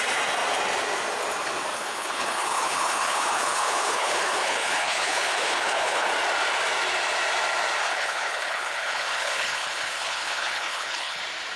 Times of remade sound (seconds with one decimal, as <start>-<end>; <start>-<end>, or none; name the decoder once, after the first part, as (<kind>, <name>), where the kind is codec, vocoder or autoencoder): 1.7-6.1 (codec, HILCodec); 7.8-11.2